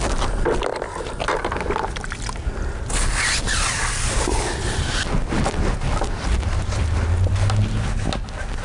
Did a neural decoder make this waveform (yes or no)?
no